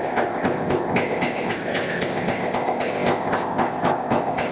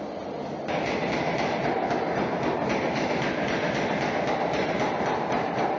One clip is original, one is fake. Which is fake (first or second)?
first